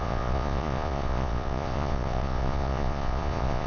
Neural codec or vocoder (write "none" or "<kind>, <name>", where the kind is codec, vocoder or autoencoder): vocoder, Vocos